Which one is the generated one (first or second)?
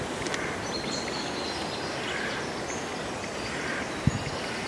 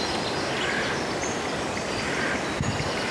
second